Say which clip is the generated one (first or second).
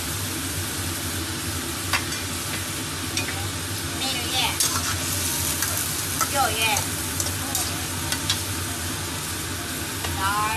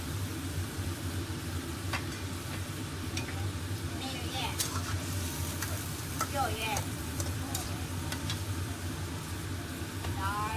second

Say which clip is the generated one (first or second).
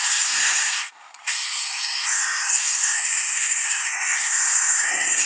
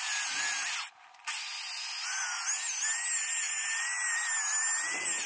first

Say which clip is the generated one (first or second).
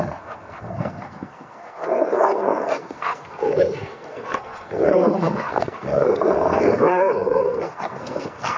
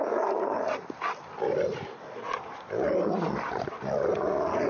first